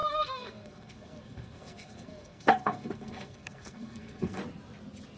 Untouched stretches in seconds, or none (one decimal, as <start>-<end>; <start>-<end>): 4.4-5.2